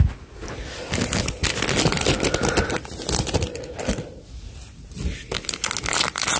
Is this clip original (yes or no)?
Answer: yes